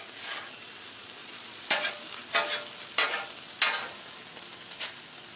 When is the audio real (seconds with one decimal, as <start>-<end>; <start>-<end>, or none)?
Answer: 0.0-1.2; 1.9-5.4